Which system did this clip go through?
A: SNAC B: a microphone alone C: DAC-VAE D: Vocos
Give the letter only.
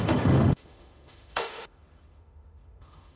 C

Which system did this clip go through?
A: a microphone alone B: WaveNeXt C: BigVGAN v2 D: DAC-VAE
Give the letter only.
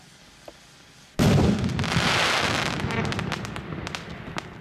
A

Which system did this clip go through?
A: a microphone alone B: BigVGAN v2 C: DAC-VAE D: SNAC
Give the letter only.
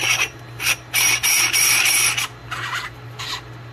A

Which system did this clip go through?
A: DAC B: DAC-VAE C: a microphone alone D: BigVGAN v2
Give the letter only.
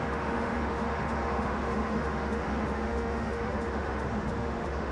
B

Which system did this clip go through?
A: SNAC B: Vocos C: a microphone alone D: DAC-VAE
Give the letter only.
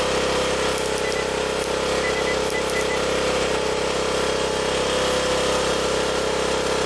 C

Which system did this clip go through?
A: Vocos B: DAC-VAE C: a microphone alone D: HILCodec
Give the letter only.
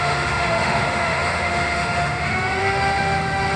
B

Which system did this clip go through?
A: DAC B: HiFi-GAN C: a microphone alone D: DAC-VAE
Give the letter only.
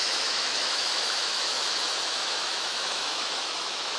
D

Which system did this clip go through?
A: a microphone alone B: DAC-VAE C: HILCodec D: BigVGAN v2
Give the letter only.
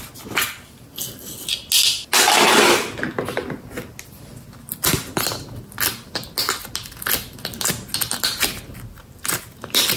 A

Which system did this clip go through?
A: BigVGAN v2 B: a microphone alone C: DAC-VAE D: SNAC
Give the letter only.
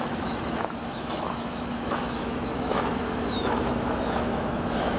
C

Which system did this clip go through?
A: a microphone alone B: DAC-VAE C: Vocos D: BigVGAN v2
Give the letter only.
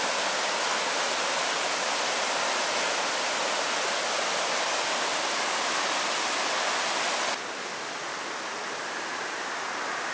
A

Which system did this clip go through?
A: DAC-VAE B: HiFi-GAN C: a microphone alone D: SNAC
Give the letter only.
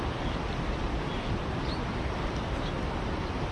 C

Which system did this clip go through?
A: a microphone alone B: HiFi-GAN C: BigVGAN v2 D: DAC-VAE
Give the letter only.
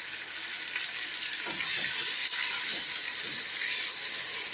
A